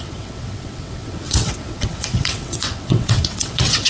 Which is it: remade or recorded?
remade